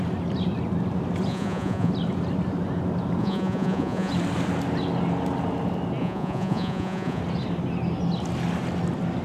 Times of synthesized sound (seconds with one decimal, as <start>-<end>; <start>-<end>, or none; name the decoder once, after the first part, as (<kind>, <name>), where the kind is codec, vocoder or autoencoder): 1.3-1.9 (vocoder, Vocos); 3.2-4.1; 6.0-7.2

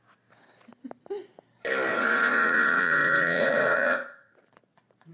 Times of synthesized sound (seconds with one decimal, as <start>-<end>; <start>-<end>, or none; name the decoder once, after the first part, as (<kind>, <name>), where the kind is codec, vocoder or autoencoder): 1.9-4.3 (vocoder, Vocos)

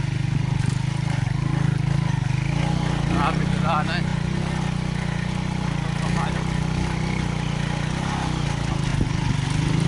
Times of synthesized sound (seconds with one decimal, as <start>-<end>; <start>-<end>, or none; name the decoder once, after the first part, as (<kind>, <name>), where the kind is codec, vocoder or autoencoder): none

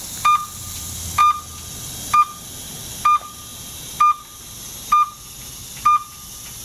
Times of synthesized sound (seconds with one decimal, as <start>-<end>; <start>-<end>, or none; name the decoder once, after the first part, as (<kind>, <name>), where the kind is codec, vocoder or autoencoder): none

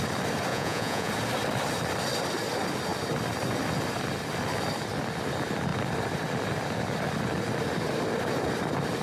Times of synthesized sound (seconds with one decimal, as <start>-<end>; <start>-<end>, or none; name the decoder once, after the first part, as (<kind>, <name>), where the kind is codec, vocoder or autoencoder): 0.5-1.1 (vocoder, Vocos)

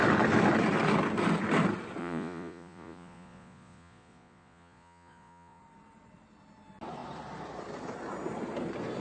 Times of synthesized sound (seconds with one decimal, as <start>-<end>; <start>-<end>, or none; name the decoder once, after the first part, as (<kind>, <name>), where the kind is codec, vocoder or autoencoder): 2.0-5.6 (vocoder, Vocos)